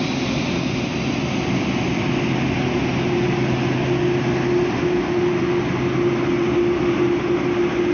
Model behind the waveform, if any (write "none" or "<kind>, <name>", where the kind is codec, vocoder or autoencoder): none